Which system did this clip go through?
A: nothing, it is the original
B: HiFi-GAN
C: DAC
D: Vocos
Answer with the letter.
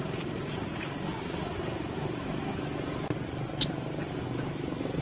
A